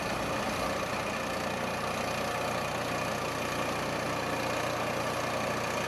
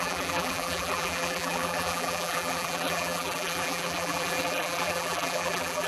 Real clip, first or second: first